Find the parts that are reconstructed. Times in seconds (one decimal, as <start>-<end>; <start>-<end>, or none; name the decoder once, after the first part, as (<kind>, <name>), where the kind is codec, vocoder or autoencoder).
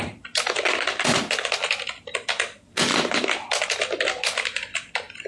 none